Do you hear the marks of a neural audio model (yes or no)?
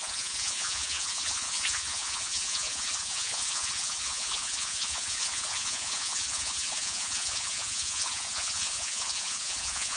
yes